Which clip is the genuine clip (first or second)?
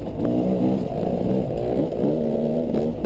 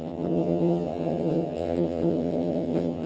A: first